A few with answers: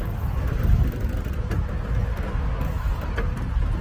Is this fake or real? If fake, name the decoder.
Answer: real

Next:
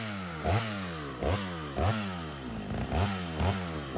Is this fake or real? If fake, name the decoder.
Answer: real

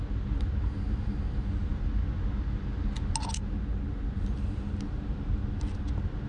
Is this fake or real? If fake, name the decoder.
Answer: real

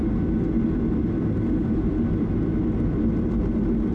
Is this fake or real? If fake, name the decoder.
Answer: real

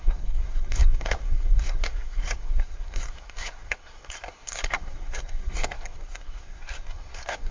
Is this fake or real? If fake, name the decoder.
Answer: fake, codec, SNAC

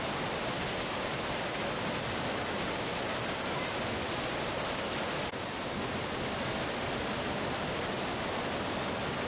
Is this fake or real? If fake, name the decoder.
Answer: real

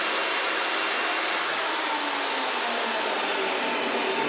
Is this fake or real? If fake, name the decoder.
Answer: real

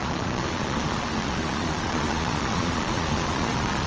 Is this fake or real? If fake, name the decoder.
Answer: fake, vocoder, Vocos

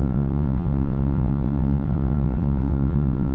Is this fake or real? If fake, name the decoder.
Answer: fake, vocoder, WaveNeXt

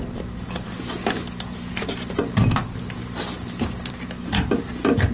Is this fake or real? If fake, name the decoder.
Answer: real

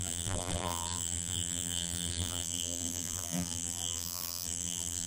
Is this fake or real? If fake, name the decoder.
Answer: fake, vocoder, BigVGAN v2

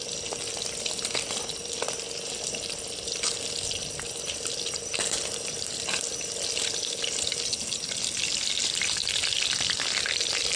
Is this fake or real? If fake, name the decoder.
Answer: real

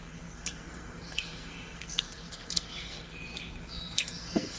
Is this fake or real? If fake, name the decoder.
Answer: fake, codec, SNAC